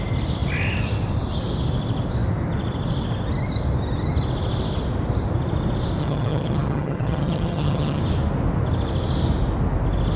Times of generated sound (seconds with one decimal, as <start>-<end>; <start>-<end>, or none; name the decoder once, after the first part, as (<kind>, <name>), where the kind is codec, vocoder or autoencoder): 6.0-8.0 (vocoder, HiFi-GAN)